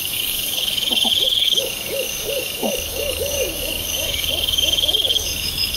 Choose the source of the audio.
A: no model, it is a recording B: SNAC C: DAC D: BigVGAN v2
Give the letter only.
C